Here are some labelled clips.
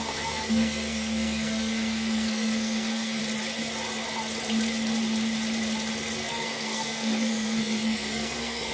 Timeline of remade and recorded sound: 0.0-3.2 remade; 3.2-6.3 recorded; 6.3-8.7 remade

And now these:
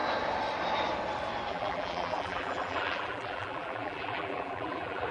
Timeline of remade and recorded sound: 0.0-1.5 recorded; 1.5-5.1 remade

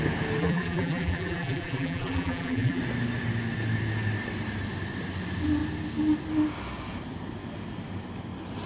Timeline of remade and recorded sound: 0.0-0.4 recorded; 0.4-2.8 remade; 2.8-8.7 recorded